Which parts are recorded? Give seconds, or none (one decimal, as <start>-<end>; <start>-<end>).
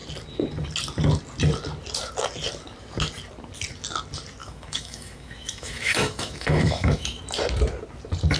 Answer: 0.0-4.4; 7.2-8.4